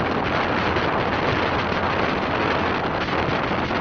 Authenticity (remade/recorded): recorded